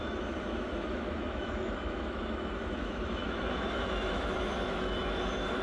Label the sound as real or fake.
fake